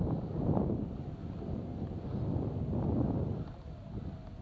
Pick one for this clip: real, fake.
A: real